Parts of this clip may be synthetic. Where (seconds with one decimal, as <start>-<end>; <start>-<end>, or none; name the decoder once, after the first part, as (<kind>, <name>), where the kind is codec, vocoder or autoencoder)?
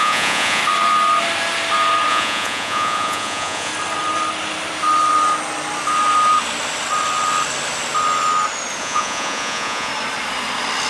0.0-0.6 (vocoder, Vocos); 2.1-3.7; 8.8-9.9